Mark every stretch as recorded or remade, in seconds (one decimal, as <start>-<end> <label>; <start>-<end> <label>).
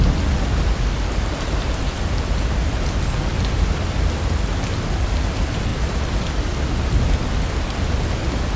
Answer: 0.0-8.6 recorded